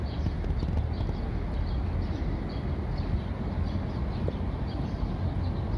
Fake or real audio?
real